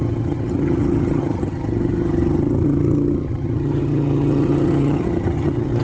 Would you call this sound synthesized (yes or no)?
yes